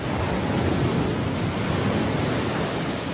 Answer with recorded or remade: recorded